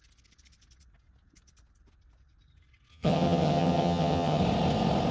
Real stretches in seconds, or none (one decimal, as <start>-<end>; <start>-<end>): 0.0-2.9; 4.4-5.1